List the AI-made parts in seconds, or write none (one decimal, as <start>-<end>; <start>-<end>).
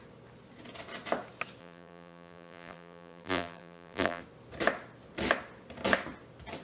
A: 1.6-4.2